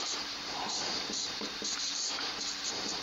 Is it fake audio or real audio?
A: fake